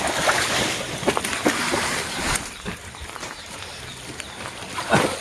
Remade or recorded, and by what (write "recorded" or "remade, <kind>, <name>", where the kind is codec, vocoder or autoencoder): recorded